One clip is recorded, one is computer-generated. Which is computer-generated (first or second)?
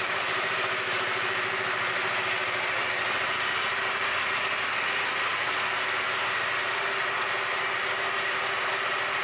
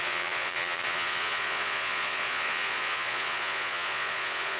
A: second